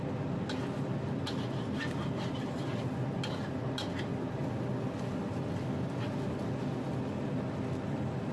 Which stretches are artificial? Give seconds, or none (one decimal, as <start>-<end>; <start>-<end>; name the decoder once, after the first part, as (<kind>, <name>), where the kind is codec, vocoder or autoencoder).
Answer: none